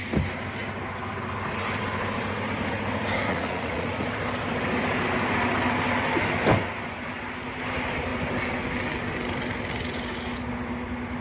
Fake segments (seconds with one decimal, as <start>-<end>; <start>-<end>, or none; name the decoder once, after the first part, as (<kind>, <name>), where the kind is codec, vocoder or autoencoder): 3.3-4.1 (vocoder, Vocos)

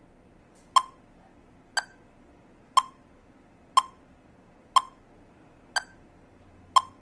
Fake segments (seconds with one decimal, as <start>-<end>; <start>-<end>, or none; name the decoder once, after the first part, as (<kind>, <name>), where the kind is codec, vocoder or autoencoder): none

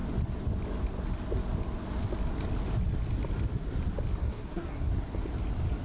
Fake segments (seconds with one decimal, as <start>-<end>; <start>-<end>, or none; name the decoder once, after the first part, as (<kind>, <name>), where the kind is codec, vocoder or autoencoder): 4.2-4.9 (codec, SNAC)

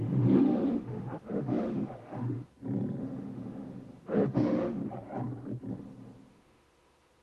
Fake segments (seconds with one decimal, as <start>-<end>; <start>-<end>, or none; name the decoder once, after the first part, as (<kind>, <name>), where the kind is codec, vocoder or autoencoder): 0.0-2.5 (autoencoder, DAC-VAE); 3.0-4.8; 5.7-7.2

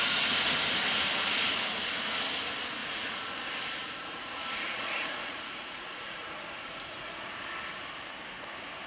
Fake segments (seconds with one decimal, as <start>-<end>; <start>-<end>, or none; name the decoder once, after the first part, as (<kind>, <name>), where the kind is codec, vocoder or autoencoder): 2.8-3.3 (vocoder, Vocos); 3.8-7.4